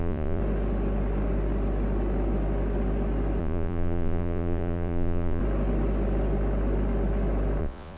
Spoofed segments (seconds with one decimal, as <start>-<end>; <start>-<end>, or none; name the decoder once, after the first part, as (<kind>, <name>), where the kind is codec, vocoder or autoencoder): 0.0-0.4 (vocoder, Vocos); 3.4-5.4; 7.6-8.0